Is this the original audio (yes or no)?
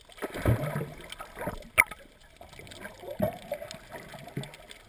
yes